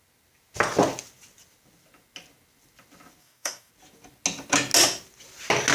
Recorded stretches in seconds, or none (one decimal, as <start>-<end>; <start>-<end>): 0.0-3.2; 3.7-5.7